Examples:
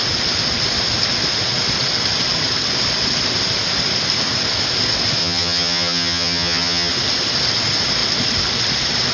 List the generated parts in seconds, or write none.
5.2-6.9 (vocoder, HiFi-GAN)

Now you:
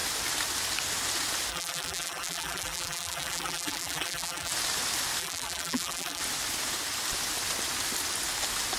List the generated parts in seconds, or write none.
1.5-4.5 (vocoder, BigVGAN v2); 5.2-6.2

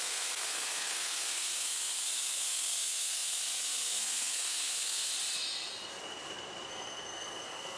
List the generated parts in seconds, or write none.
0.0-5.1 (codec, SNAC); 6.7-7.8

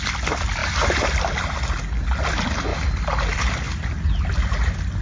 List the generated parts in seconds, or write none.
0.6-1.2 (vocoder, BigVGAN v2)